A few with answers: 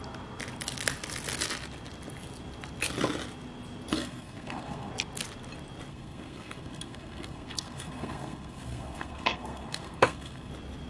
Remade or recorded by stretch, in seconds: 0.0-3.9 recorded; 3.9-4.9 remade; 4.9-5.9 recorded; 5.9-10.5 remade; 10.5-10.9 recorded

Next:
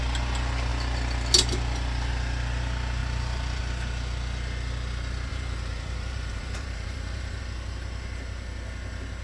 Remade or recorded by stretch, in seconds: 0.0-3.0 recorded; 3.0-3.6 remade; 3.6-5.3 recorded; 5.3-7.4 remade; 7.4-9.2 recorded

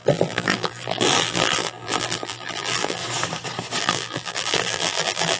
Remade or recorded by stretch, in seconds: 0.0-3.0 remade; 3.0-3.8 recorded; 3.8-5.4 remade